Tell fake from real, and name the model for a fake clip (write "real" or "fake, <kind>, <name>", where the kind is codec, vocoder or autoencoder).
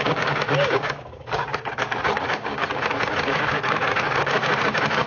fake, codec, DAC